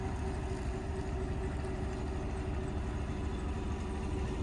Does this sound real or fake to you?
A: real